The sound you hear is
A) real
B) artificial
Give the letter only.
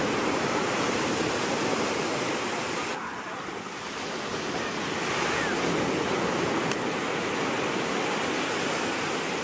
A